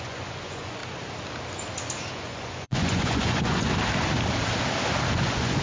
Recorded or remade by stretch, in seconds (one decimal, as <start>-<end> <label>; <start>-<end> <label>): 0.0-0.8 remade; 0.8-2.1 recorded; 2.1-3.7 remade; 3.7-5.1 recorded; 5.1-5.6 remade

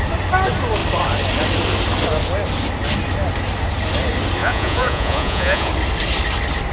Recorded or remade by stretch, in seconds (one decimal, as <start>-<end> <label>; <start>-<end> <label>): 0.0-4.4 recorded; 4.4-5.7 remade; 5.7-6.7 recorded

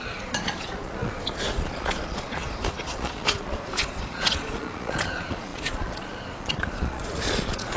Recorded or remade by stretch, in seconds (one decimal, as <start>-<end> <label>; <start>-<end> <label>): 0.0-7.8 remade

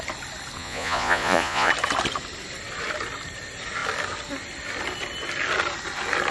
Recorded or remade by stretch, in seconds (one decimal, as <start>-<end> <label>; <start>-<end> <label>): 0.0-0.6 recorded; 0.6-1.7 remade; 1.7-6.3 recorded

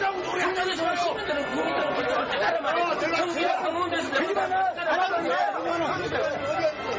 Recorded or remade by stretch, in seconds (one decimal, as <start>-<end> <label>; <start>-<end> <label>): 0.0-7.0 recorded

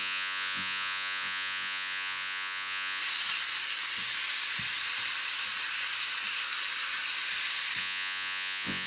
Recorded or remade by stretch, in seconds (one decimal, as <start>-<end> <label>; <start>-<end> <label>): 0.0-3.0 remade; 3.0-7.8 recorded; 7.8-8.9 remade

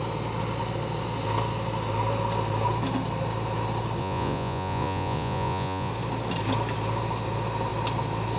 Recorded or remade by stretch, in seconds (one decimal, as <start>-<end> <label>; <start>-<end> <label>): 0.0-4.0 recorded; 4.0-5.9 remade; 5.9-8.4 recorded

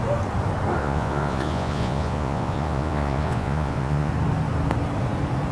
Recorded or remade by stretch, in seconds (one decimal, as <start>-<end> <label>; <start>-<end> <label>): 0.0-0.8 recorded; 0.8-4.1 remade; 4.1-5.5 recorded